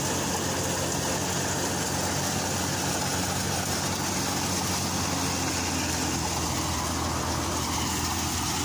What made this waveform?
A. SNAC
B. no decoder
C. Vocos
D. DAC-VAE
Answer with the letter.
B